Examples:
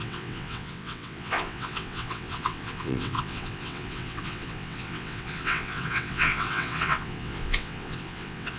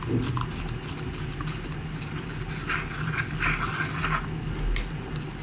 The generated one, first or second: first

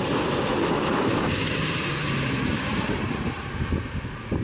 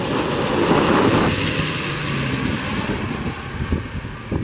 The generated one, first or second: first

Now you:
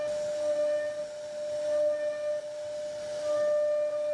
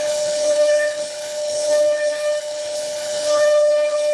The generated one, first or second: second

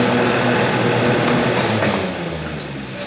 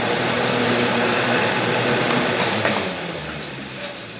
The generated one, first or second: second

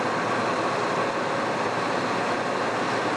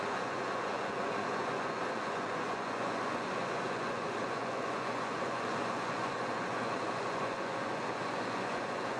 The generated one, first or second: second